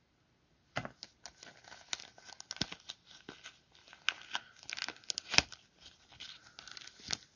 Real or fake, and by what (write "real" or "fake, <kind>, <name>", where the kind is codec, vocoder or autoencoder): real